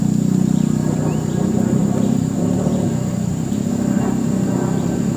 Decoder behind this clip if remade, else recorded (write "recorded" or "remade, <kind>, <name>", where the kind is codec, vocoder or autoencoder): recorded